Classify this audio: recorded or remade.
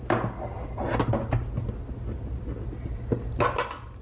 recorded